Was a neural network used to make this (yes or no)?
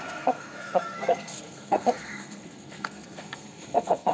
yes